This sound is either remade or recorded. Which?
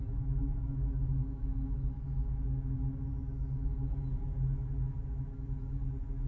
remade